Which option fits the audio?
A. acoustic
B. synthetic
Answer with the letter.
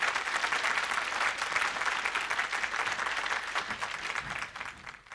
B